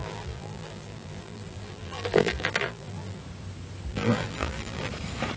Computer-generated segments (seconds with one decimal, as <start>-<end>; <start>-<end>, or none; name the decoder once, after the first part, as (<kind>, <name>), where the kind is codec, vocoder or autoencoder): 0.0-3.2 (vocoder, BigVGAN v2); 3.9-4.9